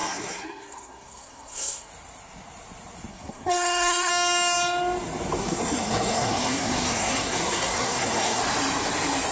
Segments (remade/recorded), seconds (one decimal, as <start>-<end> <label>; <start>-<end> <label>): 0.0-1.9 remade; 1.9-3.1 recorded; 3.1-4.1 remade; 4.1-5.4 recorded; 5.4-8.4 remade; 8.4-9.3 recorded